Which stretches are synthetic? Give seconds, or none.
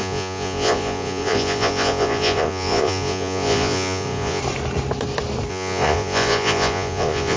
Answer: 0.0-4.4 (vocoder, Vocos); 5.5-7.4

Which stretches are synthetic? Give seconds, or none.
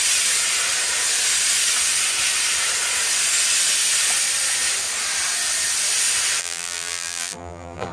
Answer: 6.4-7.9 (vocoder, BigVGAN v2)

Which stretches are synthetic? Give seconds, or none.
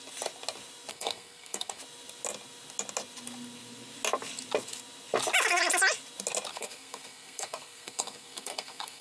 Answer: 0.9-1.8 (codec, SNAC); 6.5-9.0